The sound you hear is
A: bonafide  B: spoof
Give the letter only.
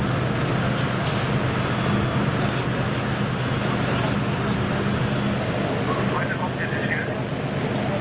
A